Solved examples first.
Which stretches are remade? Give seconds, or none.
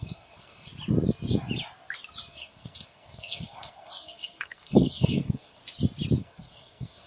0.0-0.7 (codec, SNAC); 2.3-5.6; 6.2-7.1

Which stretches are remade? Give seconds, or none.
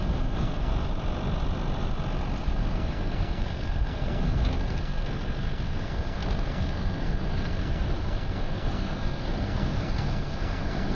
0.0-0.7 (codec, SNAC); 2.4-10.9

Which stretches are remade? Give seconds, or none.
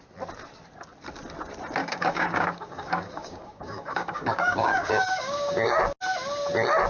1.8-5.8 (codec, DAC)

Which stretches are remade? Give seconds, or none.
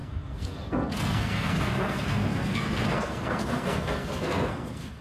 0.0-5.0 (codec, SNAC)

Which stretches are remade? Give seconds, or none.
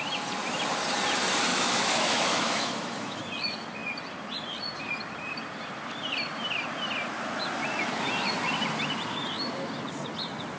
1.5-3.2 (autoencoder, DAC-VAE)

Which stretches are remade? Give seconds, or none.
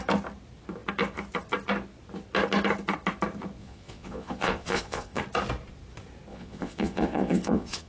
3.6-5.2 (vocoder, Vocos); 6.3-7.9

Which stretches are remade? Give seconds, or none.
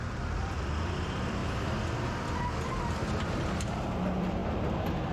0.0-1.4 (vocoder, BigVGAN v2); 2.4-4.4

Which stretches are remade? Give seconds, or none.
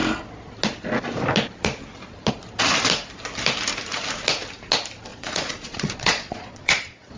5.1-7.2 (vocoder, Vocos)